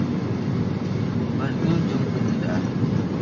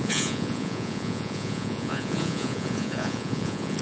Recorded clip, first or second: first